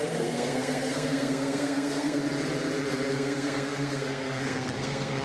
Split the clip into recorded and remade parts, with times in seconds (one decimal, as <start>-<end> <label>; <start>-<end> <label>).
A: 0.0-2.2 remade; 2.2-3.1 recorded; 3.1-5.2 remade